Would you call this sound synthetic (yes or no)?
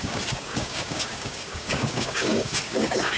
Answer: yes